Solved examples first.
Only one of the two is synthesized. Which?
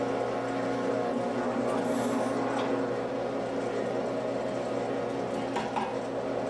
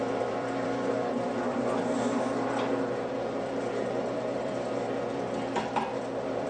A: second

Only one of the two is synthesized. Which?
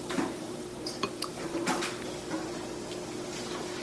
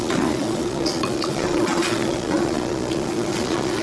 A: second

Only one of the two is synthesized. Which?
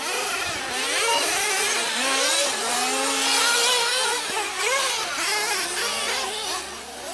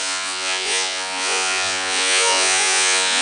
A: second